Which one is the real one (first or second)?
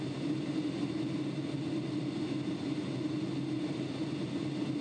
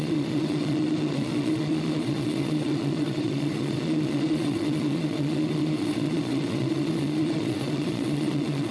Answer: first